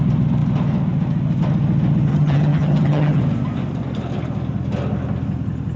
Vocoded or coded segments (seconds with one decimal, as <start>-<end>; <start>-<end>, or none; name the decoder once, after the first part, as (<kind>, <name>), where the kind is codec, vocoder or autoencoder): 2.1-3.2 (vocoder, HiFi-GAN)